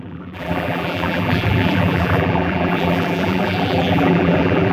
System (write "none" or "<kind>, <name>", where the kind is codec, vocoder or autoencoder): vocoder, BigVGAN v2